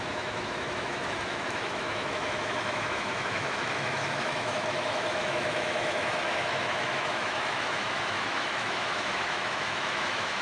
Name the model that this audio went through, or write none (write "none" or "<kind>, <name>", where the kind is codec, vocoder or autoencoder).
autoencoder, DAC-VAE